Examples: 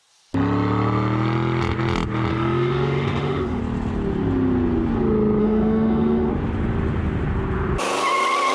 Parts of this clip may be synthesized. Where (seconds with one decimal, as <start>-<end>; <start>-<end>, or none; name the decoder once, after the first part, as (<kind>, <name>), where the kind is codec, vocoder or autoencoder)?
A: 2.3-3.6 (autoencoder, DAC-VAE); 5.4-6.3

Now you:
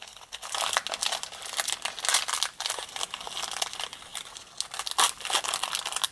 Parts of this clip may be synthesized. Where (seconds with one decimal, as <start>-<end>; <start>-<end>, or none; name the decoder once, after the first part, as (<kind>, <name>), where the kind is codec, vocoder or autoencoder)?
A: 0.0-0.5 (codec, HILCodec)

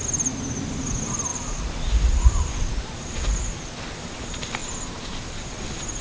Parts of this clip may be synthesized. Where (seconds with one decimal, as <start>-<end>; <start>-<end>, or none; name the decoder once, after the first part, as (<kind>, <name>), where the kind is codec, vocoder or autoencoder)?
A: 1.3-3.4 (vocoder, BigVGAN v2); 4.6-5.5

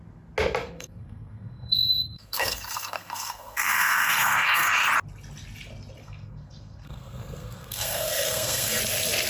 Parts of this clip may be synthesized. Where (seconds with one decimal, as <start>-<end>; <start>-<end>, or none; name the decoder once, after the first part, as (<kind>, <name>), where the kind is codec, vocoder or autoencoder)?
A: 0.6-4.7 (codec, SNAC); 6.0-8.8